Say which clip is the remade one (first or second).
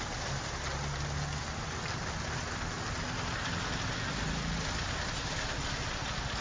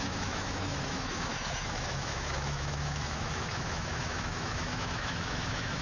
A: second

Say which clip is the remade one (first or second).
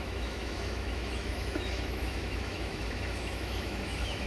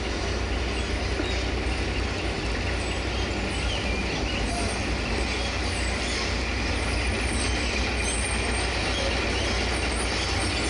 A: first